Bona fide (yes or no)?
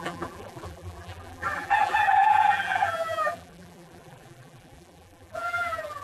no